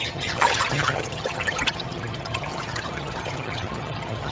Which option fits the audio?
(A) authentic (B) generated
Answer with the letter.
B